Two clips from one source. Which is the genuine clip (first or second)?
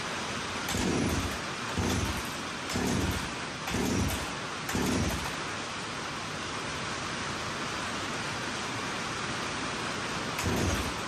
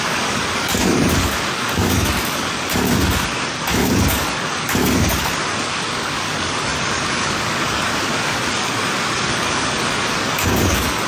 first